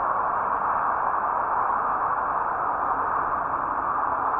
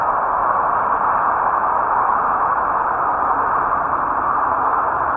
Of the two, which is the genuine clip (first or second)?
first